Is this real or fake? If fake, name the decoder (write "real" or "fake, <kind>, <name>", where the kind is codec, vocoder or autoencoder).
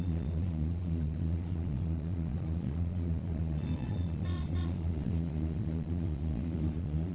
fake, vocoder, Vocos